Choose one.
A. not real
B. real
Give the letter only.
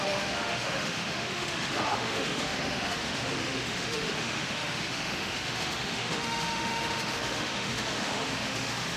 A